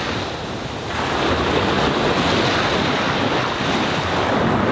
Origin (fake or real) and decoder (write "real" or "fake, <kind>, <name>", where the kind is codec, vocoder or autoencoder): real